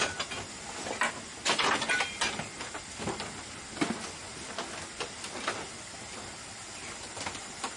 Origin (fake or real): real